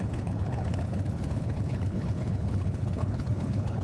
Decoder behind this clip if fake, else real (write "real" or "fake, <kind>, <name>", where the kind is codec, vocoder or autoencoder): fake, codec, HILCodec